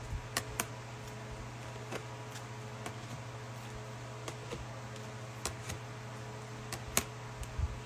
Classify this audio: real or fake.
real